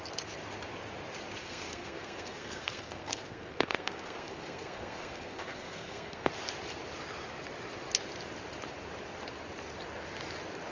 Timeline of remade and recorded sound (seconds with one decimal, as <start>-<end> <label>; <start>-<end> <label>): 0.0-1.4 recorded; 1.4-6.3 remade; 6.3-10.7 recorded